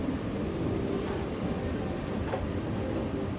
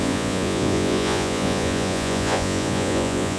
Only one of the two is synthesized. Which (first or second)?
second